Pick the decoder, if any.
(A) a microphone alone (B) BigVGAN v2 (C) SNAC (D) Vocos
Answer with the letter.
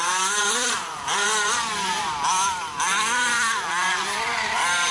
B